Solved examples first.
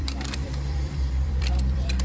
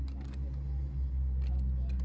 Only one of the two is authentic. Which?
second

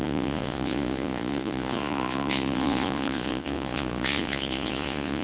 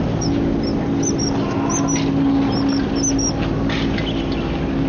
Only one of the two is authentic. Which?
second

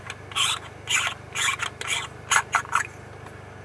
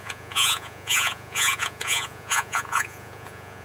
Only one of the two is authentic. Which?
first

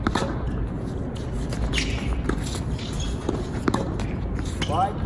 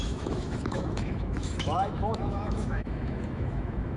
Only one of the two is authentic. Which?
first